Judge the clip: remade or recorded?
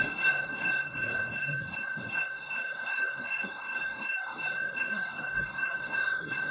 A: remade